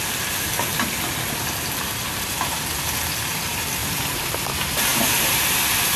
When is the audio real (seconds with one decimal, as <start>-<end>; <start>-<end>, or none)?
0.0-3.8; 4.4-6.0